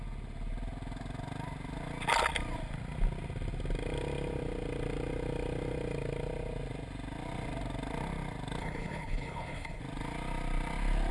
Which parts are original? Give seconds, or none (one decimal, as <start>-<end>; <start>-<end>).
0.0-8.6; 9.8-11.1